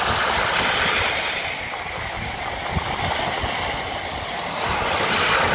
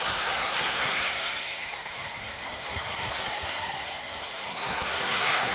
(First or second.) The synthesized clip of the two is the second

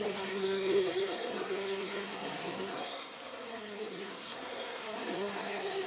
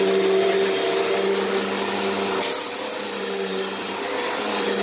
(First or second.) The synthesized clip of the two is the first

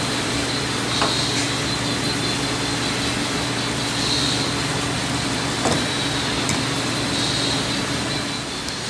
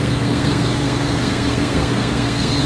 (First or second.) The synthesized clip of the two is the second